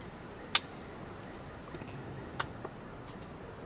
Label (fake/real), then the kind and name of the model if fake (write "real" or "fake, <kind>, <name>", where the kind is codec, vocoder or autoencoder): real